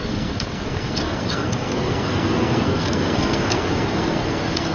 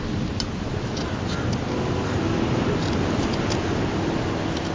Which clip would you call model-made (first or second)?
first